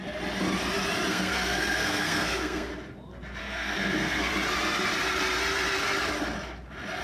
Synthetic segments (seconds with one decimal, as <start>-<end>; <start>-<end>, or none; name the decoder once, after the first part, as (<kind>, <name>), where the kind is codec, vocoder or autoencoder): 1.1-2.7 (codec, SNAC); 3.4-4.3